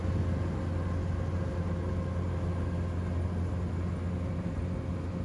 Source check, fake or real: real